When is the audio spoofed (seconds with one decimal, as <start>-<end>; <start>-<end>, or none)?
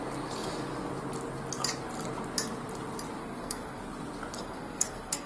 3.2-3.8; 4.4-5.3